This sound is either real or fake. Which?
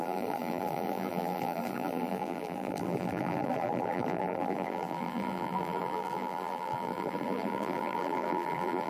fake